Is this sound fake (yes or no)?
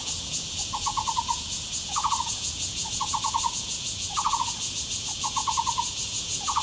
yes